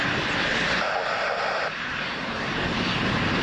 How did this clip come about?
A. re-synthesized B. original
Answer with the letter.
B